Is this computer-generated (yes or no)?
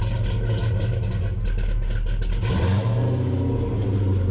no